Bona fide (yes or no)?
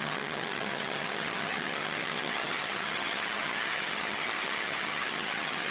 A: no